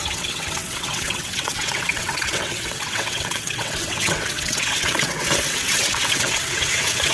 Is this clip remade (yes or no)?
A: yes